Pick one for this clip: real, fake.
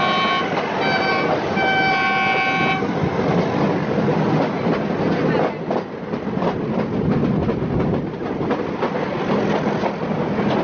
real